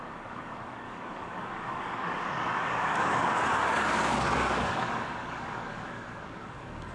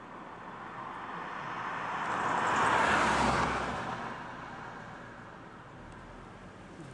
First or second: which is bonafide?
second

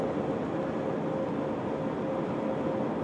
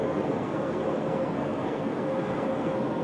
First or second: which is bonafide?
first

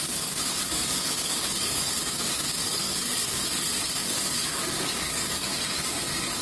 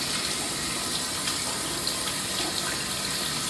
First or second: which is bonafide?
second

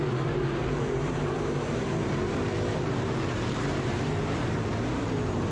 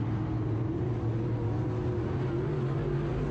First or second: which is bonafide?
second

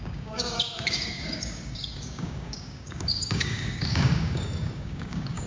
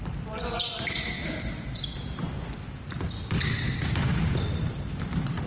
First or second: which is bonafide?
second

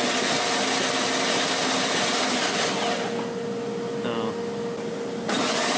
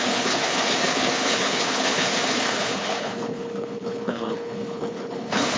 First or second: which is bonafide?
first